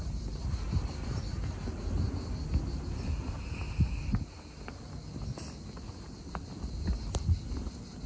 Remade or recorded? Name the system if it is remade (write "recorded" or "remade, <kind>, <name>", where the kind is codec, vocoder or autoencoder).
recorded